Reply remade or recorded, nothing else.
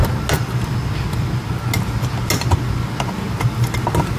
recorded